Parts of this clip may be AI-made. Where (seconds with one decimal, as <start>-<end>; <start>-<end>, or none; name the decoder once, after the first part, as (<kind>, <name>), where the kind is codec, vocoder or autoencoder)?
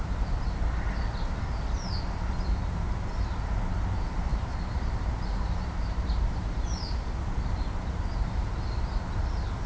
4.3-7.1 (vocoder, BigVGAN v2)